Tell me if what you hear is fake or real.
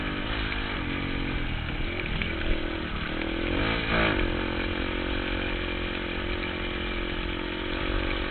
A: real